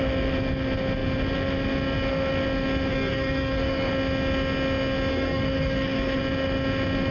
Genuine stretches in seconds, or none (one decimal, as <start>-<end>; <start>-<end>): 0.0-2.9; 3.9-5.1; 6.2-7.1